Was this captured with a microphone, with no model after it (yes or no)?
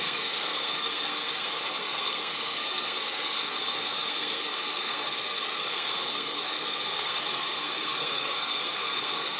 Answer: no